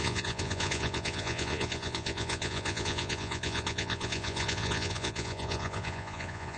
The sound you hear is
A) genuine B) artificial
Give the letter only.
B